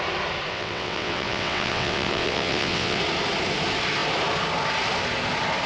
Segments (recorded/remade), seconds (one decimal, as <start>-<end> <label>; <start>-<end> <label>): 0.0-0.5 recorded; 0.5-3.0 remade; 3.0-5.7 recorded